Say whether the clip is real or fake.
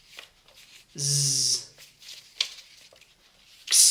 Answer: real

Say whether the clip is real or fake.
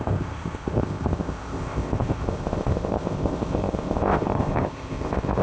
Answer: fake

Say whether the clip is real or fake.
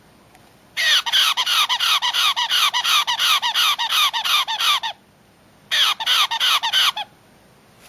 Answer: real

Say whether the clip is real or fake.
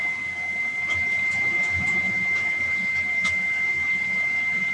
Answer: real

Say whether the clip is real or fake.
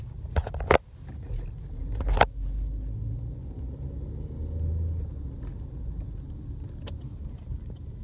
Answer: real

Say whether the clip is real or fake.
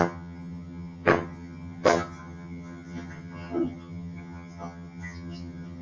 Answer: fake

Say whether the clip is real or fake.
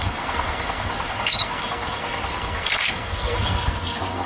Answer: fake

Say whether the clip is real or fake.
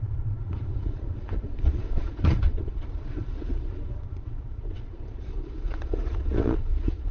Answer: fake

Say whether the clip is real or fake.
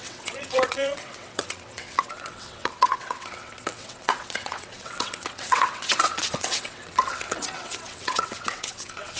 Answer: fake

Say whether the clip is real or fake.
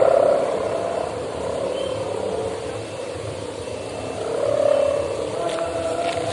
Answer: real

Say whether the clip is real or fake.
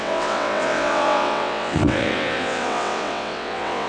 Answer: fake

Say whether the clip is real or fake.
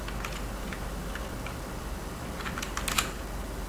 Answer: real